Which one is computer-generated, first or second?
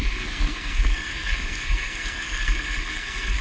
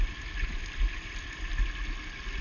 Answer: first